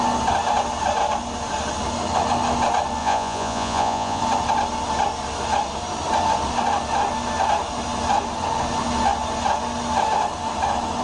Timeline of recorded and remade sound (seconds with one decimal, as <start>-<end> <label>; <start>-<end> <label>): 0.0-3.0 recorded; 3.0-4.2 remade; 4.2-11.0 recorded